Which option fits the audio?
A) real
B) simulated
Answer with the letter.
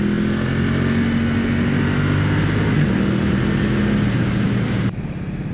A